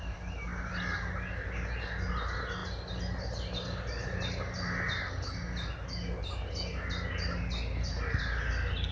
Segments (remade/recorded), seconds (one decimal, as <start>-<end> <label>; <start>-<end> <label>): 0.0-8.9 recorded